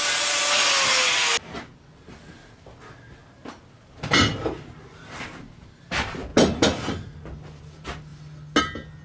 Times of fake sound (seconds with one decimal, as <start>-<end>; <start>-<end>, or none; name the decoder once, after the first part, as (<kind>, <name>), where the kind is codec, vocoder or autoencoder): none